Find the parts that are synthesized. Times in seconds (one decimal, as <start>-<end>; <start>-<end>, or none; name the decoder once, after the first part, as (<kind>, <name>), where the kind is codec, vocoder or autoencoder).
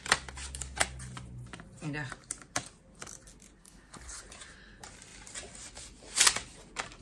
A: 3.6-4.2 (codec, HILCodec)